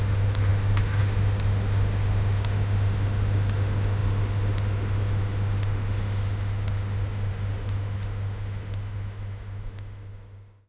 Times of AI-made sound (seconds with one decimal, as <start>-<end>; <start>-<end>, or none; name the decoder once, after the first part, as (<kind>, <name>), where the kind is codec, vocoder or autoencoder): 0.0-10.7 (autoencoder, DAC-VAE)